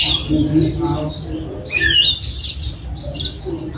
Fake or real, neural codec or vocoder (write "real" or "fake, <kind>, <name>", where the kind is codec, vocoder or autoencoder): real